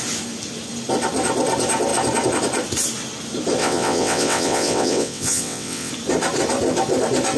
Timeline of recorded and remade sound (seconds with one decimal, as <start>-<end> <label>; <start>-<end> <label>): 0.0-3.6 recorded; 3.6-5.9 remade; 5.9-7.4 recorded